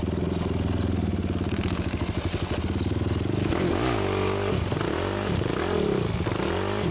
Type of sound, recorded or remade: recorded